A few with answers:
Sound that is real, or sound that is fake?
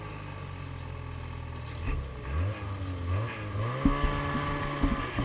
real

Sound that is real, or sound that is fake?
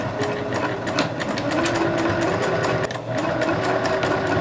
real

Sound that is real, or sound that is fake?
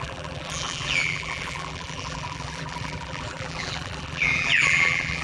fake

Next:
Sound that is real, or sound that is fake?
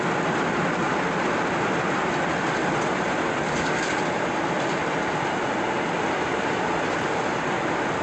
fake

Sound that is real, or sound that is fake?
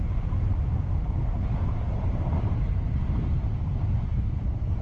fake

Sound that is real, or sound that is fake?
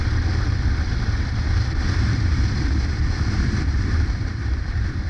fake